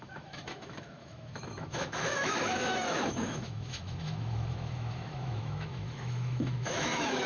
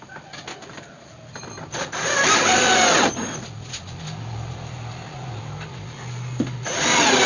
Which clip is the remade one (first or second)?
first